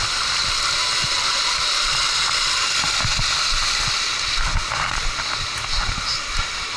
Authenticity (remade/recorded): recorded